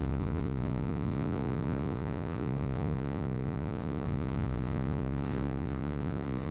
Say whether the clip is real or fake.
fake